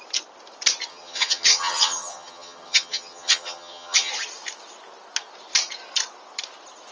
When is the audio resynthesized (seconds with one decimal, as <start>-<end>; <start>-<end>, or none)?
0.9-4.1